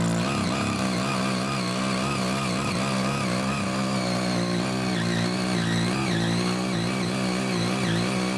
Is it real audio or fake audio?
real